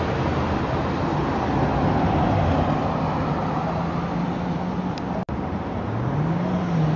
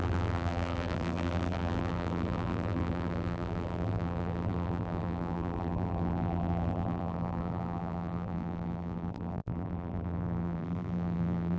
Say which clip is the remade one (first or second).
second